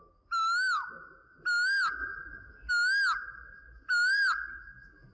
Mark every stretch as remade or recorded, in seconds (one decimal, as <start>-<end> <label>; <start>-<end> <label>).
0.0-3.3 recorded; 3.3-4.5 remade; 4.5-5.1 recorded